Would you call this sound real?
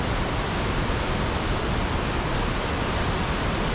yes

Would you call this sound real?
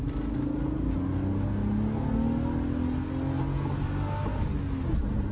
yes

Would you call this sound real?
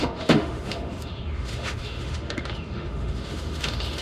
no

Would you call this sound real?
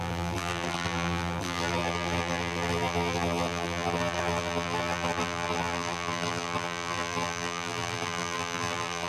no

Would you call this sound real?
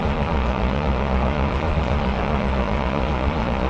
no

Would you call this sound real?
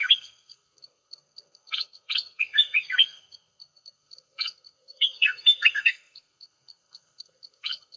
no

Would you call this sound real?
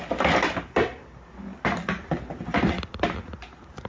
yes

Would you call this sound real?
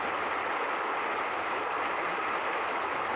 yes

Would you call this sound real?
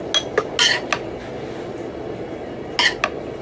yes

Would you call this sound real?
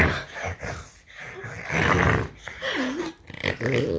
yes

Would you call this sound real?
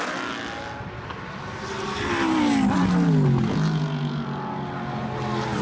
yes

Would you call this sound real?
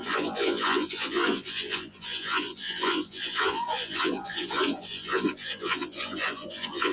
no